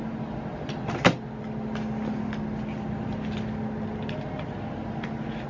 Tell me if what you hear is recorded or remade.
recorded